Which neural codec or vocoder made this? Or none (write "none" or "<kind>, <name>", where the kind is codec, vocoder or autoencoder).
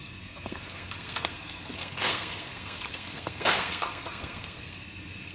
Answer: codec, SNAC